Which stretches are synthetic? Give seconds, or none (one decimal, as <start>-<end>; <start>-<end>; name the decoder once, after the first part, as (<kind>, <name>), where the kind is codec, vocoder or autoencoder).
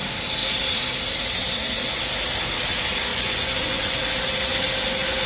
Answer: 3.1-4.0 (vocoder, Vocos)